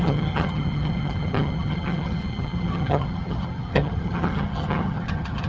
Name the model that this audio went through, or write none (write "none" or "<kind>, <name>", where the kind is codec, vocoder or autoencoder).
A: vocoder, HiFi-GAN